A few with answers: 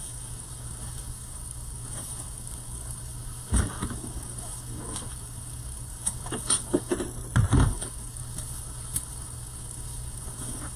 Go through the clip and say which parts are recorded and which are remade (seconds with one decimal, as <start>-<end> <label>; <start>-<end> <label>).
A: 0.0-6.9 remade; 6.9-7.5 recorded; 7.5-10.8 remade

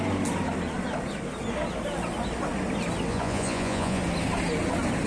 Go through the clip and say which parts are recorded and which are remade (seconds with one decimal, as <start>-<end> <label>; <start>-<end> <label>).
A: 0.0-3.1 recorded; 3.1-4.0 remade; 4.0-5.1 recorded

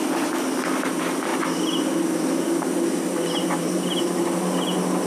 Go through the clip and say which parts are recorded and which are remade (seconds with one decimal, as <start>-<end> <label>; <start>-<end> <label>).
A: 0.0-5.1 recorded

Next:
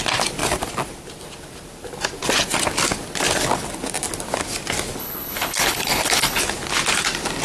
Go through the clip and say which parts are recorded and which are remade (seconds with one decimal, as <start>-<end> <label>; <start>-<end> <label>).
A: 0.0-5.0 recorded; 5.0-6.4 remade; 6.4-7.4 recorded